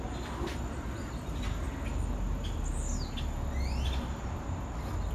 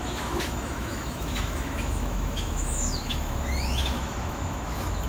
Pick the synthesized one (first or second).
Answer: second